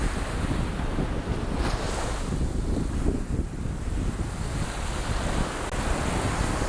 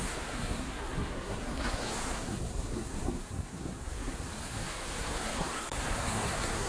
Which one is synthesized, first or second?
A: second